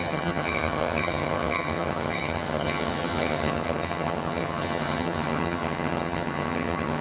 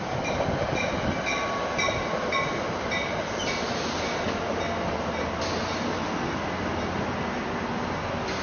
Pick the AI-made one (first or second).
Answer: first